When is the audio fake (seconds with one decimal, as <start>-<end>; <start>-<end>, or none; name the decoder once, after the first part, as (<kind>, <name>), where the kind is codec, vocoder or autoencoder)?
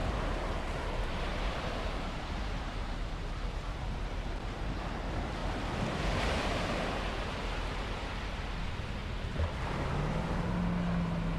0.0-4.8 (vocoder, BigVGAN v2)